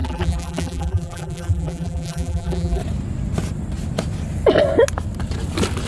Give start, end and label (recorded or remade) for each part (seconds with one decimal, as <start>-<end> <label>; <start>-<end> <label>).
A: 0.0-2.8 remade; 2.8-5.9 recorded